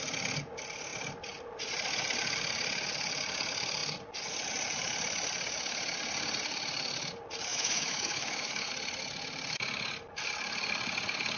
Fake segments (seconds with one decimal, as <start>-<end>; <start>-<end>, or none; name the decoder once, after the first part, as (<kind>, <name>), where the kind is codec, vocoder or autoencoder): 7.5-8.7 (autoencoder, DAC-VAE)